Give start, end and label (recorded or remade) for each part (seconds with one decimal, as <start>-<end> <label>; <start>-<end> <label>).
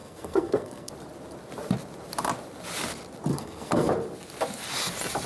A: 0.0-0.9 remade; 0.9-3.3 recorded; 3.3-3.9 remade; 3.9-5.3 recorded